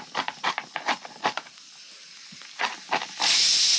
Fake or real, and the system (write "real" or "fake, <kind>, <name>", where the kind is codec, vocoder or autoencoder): real